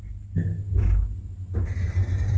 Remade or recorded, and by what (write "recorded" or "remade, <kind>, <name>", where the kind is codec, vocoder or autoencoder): recorded